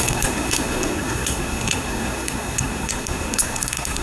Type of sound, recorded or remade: remade